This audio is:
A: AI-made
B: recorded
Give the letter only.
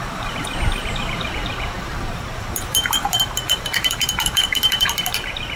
A